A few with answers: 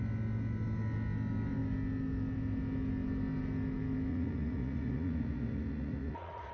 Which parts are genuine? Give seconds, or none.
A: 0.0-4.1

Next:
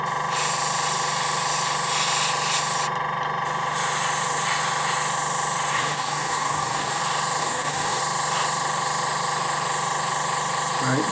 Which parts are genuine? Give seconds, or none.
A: 0.0-5.7; 7.0-7.4; 8.0-11.1